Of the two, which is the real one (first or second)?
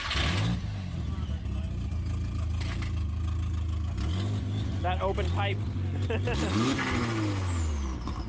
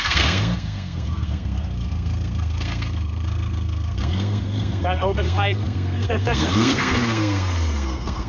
first